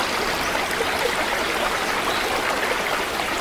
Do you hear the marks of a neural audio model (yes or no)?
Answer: no